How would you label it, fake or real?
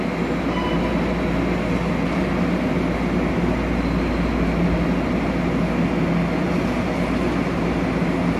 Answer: real